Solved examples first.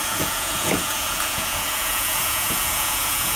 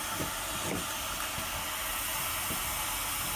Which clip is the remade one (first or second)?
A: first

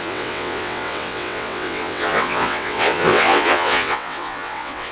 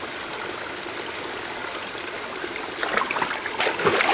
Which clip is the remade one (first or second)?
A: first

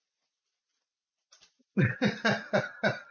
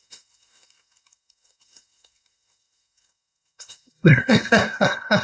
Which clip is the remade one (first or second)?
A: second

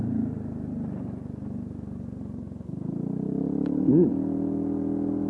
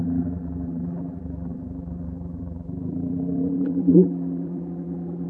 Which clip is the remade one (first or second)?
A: second